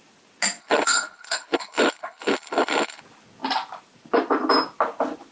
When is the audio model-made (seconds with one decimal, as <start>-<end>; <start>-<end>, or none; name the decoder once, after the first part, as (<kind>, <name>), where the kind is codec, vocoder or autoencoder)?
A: 0.6-3.0 (codec, HILCodec)